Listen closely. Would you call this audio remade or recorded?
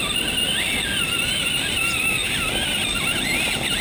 recorded